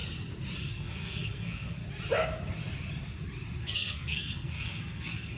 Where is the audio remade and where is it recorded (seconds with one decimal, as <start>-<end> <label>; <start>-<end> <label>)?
0.0-0.7 recorded; 0.7-1.8 remade; 1.8-3.6 recorded; 3.6-5.4 remade

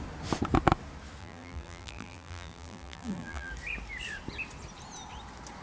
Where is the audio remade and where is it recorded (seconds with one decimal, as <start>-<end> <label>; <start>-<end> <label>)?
0.0-1.2 recorded; 1.2-3.5 remade; 3.5-5.6 recorded

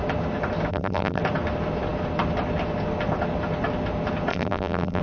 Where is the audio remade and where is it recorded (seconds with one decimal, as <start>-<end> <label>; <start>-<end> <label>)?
0.0-0.7 recorded; 0.7-1.2 remade; 1.2-4.3 recorded; 4.3-5.0 remade

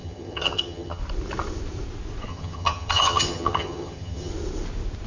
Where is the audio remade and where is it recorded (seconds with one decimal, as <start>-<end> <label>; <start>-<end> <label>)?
0.0-1.0 remade; 1.0-2.3 recorded; 2.3-4.3 remade; 4.3-5.1 recorded

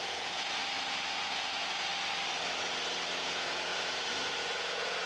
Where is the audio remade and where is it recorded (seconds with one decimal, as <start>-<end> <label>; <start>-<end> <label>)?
0.0-0.6 remade; 0.6-1.2 recorded; 1.2-1.9 remade; 1.9-3.2 recorded; 3.2-3.7 remade; 3.7-4.4 recorded; 4.4-5.1 remade

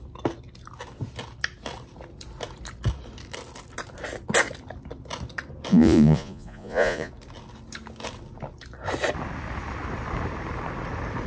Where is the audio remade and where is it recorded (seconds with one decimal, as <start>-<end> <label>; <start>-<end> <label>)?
0.0-5.7 recorded; 5.7-7.1 remade; 7.1-11.3 recorded

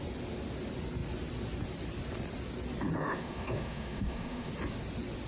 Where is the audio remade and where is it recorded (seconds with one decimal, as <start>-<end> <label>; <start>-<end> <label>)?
0.0-3.0 recorded; 3.0-4.5 remade; 4.5-5.3 recorded